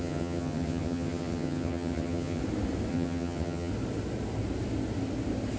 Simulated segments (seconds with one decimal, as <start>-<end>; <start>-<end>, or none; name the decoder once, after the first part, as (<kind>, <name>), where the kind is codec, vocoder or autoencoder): 0.0-2.4 (vocoder, HiFi-GAN); 2.9-3.7